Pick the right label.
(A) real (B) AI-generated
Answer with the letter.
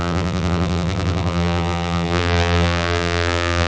B